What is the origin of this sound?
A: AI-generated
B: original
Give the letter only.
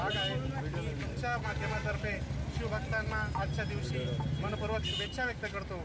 B